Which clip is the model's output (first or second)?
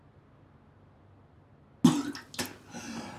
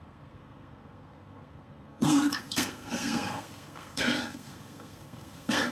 second